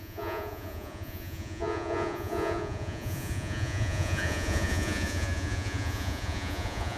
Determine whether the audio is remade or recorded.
remade